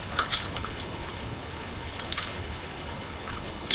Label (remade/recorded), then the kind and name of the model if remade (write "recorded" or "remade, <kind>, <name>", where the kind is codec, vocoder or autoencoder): remade, codec, HILCodec